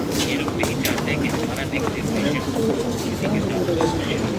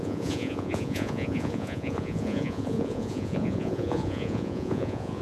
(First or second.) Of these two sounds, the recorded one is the first